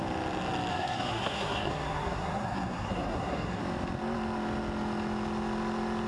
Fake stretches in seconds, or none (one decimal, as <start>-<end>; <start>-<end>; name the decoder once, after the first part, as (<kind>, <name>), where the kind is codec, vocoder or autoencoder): 0.7-3.6 (codec, SNAC)